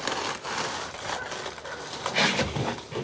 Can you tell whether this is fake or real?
real